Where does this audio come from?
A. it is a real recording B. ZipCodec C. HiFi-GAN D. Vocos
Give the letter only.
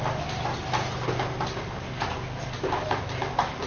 A